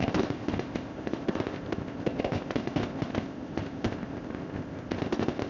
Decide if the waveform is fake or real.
fake